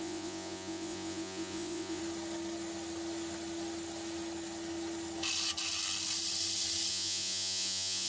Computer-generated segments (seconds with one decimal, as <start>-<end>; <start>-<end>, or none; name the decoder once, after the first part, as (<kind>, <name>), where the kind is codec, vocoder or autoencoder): 0.0-2.0 (vocoder, Vocos); 6.9-8.1